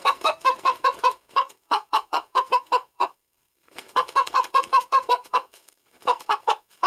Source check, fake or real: fake